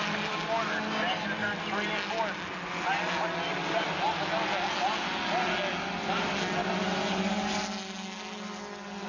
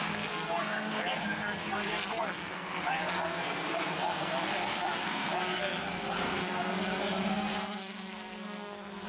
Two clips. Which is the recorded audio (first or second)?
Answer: first